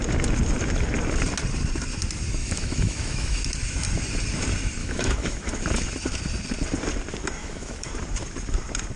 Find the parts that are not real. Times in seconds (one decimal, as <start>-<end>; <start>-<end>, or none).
2.4-3.4; 4.8-5.6; 7.4-7.9